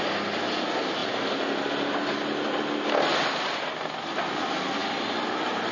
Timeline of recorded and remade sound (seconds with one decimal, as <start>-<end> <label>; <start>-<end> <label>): 0.0-5.7 recorded